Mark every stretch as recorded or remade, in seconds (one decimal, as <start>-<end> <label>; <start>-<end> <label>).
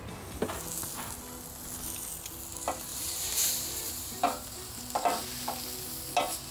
0.0-2.9 recorded; 2.9-4.8 remade; 4.8-6.5 recorded